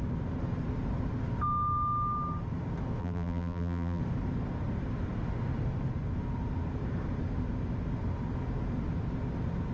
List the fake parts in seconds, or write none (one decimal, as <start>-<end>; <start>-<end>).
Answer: 3.0-4.0